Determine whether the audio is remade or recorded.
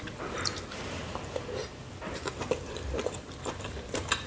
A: remade